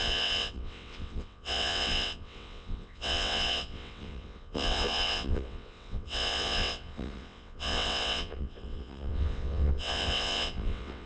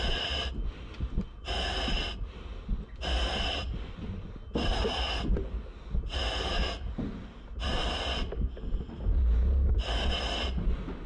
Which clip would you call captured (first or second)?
second